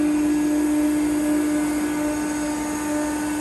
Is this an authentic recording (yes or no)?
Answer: yes